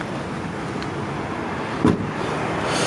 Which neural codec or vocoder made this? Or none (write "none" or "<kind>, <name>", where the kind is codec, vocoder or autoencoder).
none